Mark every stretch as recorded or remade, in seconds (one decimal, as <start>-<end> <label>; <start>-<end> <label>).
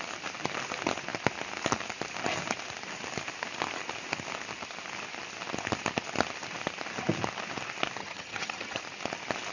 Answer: 0.0-8.0 recorded; 8.0-8.8 remade; 8.8-9.5 recorded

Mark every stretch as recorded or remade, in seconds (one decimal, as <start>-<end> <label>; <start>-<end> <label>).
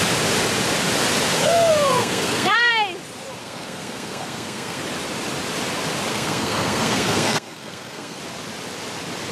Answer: 0.0-1.3 recorded; 1.3-2.7 remade; 2.7-3.4 recorded; 3.4-4.8 remade; 4.8-6.1 recorded; 6.1-8.2 remade; 8.2-9.3 recorded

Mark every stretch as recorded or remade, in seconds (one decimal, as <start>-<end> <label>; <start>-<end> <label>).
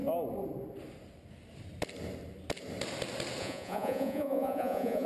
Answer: 0.0-3.4 recorded; 3.4-5.1 remade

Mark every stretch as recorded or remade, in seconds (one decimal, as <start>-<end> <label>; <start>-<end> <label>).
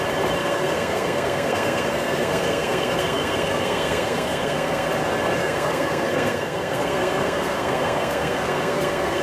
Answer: 0.0-0.4 recorded; 0.4-4.9 remade; 4.9-5.4 recorded; 5.4-9.2 remade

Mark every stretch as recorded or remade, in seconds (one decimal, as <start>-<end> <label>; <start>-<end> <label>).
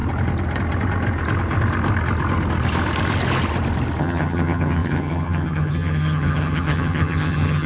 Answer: 0.0-4.0 recorded; 4.0-7.7 remade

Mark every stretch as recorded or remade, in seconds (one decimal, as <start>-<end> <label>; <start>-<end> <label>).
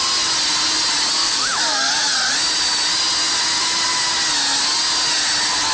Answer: 0.0-1.2 recorded; 1.2-1.9 remade; 1.9-5.7 recorded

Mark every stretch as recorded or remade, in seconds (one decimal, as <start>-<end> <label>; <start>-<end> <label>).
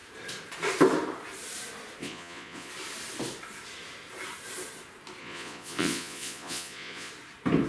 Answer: 0.0-2.0 recorded; 2.0-2.7 remade; 2.7-5.2 recorded; 5.2-7.1 remade; 7.1-7.7 recorded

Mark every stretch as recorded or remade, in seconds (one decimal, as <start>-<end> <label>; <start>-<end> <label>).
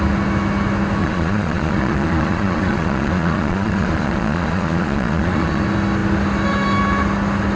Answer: 0.0-1.0 recorded; 1.0-5.6 remade; 5.6-7.6 recorded